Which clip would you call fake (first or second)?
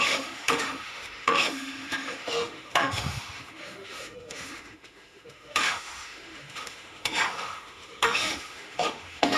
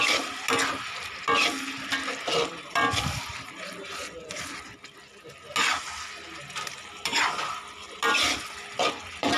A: first